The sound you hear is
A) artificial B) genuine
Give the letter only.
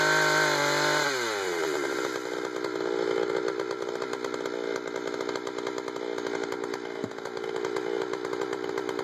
B